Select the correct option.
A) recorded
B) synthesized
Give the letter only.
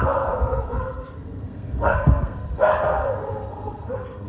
B